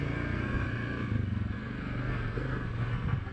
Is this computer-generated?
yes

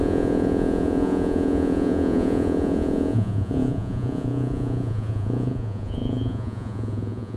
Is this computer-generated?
yes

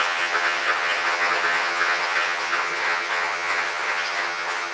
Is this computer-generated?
yes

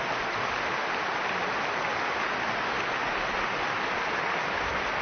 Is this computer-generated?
no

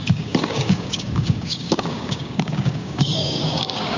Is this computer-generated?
yes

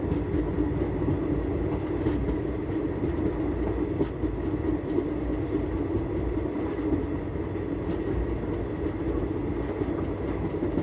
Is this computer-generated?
no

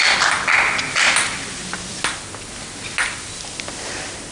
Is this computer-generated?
no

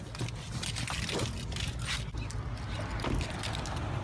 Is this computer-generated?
no